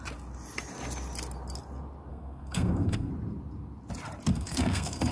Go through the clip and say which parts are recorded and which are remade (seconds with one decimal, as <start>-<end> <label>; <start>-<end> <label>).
0.0-2.1 recorded; 2.1-3.1 remade; 3.1-4.3 recorded; 4.3-5.1 remade